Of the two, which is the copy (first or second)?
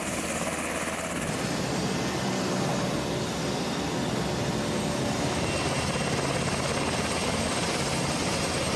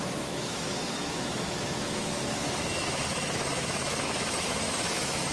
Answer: second